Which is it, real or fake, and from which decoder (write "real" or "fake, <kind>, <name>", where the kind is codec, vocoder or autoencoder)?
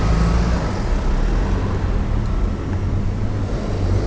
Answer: real